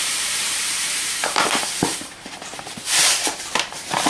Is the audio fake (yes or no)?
yes